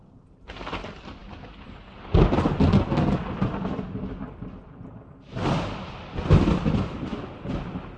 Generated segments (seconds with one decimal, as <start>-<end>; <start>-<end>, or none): none